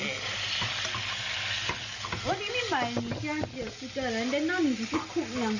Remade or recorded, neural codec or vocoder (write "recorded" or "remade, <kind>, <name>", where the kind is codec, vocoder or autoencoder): recorded